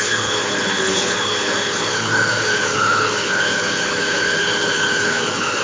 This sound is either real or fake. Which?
fake